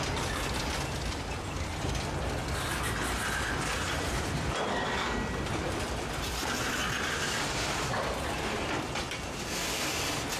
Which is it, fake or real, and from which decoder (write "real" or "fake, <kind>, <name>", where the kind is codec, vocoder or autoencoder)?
real